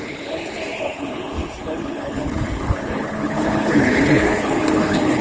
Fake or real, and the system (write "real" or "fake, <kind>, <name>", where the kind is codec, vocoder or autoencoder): fake, codec, HILCodec